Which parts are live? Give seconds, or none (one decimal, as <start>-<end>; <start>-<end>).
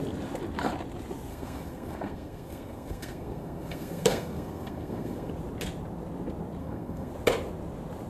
0.0-1.3; 5.3-6.6; 7.1-8.1